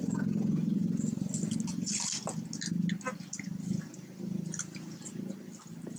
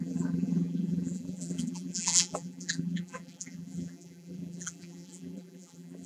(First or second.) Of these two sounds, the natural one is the first